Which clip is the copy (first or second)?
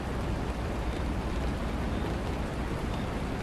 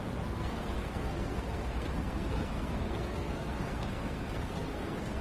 second